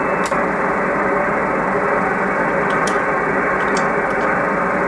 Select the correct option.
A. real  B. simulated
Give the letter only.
A